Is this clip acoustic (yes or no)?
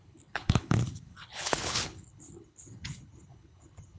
no